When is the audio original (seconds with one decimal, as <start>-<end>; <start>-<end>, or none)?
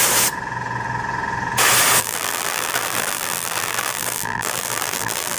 0.0-2.0